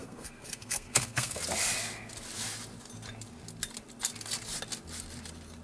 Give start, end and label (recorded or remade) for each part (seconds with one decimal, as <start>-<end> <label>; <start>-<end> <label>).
0.0-1.4 remade; 1.4-5.6 recorded